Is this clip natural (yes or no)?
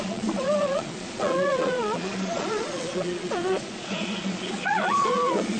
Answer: no